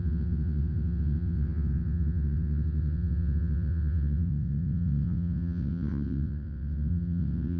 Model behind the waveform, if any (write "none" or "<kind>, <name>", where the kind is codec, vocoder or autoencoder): vocoder, WaveNeXt